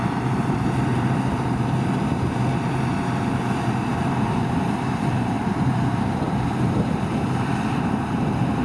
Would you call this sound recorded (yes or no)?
no